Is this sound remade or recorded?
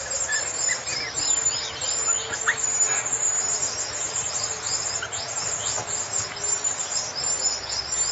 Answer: recorded